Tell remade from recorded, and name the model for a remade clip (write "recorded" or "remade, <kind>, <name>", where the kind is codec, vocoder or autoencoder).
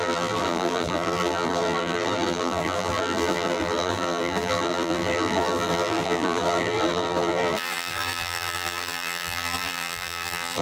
remade, vocoder, BigVGAN v2